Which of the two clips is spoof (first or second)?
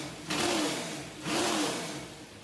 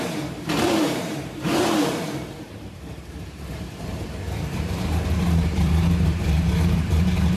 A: second